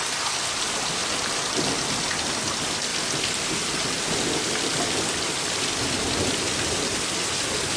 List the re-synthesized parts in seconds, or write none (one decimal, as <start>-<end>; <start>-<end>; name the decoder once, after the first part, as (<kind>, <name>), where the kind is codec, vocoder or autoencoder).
none